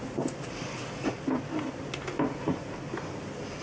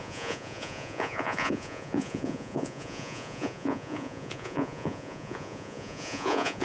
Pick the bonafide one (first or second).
first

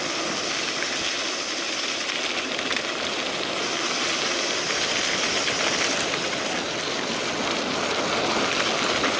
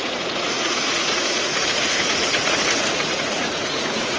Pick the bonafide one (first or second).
first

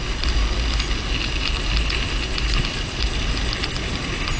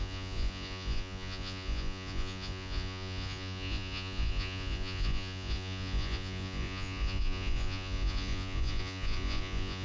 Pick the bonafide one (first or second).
first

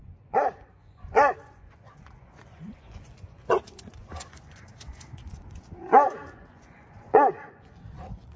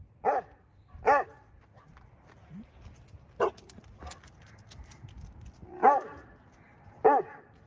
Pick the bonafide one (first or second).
second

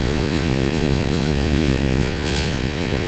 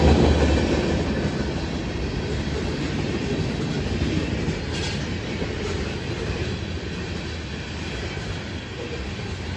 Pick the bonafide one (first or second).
second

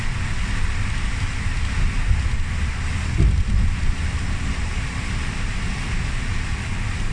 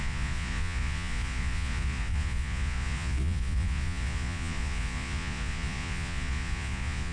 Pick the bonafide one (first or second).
first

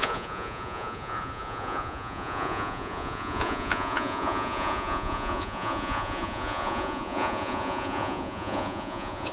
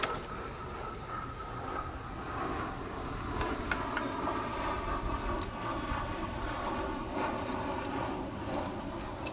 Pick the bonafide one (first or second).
second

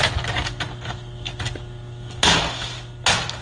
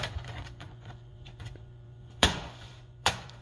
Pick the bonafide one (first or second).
first